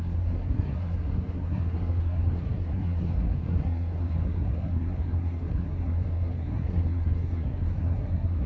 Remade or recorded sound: remade